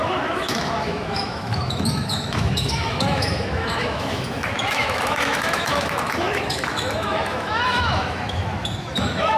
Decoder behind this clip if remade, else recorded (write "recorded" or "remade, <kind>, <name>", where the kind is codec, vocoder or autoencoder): remade, autoencoder, DAC-VAE